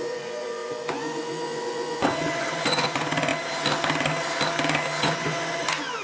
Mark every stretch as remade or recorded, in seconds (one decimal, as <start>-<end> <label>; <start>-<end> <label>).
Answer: 0.0-3.3 remade; 3.3-5.0 recorded; 5.0-6.0 remade